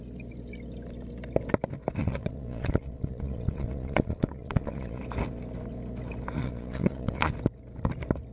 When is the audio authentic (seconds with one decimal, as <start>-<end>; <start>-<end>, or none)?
0.0-2.0; 5.0-6.4; 7.3-8.3